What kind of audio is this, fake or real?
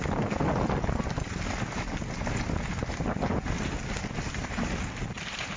real